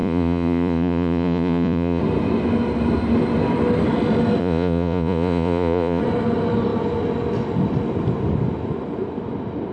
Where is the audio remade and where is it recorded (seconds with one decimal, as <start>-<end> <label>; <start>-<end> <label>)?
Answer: 0.0-2.0 remade; 2.0-4.4 recorded; 4.4-6.0 remade; 6.0-9.7 recorded